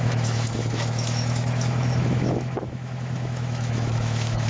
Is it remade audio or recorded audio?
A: remade